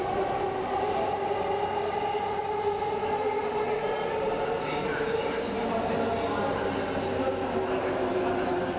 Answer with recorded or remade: recorded